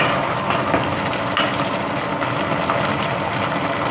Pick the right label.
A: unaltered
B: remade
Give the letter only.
A